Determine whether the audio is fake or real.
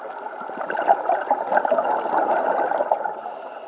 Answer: real